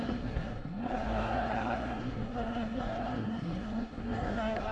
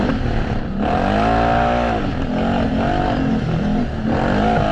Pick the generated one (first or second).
first